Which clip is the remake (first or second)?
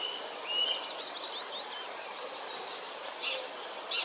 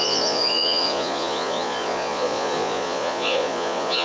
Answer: second